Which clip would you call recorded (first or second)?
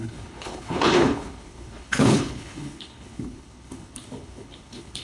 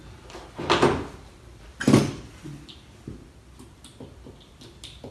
second